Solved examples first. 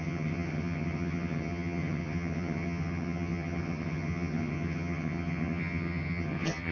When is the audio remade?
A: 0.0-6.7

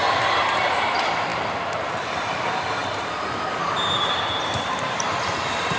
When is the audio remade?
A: none

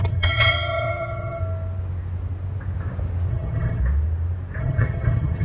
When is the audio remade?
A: 0.0-1.4; 3.3-3.8; 4.6-5.4